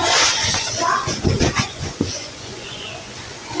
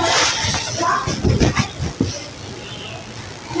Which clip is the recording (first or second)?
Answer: second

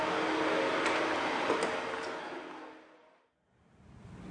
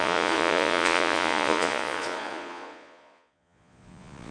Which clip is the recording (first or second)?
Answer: first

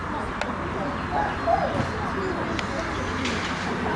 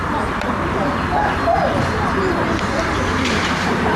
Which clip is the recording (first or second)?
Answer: first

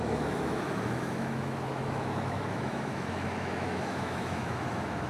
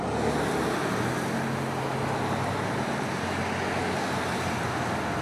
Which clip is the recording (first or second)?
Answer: second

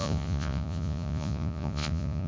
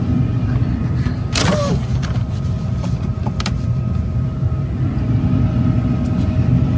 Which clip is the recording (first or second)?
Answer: second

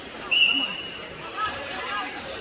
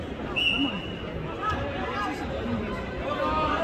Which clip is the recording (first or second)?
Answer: second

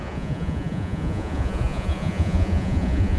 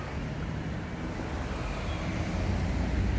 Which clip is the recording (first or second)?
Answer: second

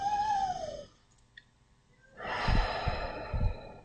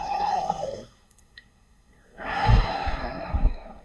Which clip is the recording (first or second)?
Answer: first